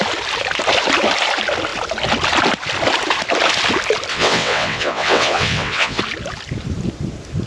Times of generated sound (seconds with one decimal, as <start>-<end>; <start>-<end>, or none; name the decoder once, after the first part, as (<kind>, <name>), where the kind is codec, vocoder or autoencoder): 4.1-6.0 (vocoder, WaveNeXt)